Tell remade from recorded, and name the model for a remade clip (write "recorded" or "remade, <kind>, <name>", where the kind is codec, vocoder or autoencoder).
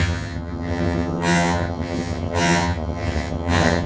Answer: remade, vocoder, HiFi-GAN